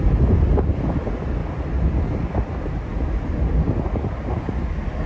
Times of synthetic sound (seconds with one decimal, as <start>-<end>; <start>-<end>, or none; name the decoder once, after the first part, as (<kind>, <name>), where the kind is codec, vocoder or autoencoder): none